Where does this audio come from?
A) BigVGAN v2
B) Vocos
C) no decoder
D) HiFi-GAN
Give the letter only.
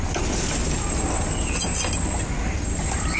C